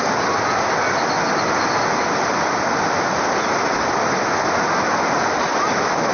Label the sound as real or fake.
real